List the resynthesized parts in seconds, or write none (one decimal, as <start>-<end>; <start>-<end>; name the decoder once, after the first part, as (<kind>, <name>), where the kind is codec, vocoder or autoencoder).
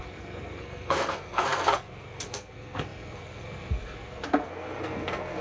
0.0-5.4 (codec, SNAC)